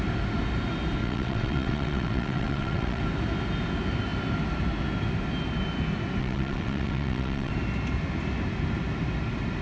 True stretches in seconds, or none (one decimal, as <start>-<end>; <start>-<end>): 0.0-1.0; 3.0-6.2; 7.5-9.6